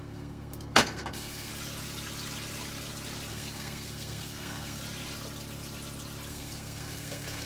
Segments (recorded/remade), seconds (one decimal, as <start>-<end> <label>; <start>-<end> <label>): 0.0-1.5 remade; 1.5-3.3 recorded; 3.3-4.8 remade; 4.8-6.3 recorded; 6.3-7.5 remade